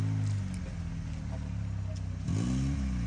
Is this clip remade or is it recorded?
recorded